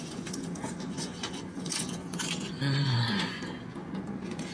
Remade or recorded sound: remade